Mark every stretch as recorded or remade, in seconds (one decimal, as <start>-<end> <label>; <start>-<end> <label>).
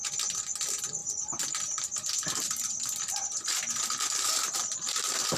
0.0-5.4 recorded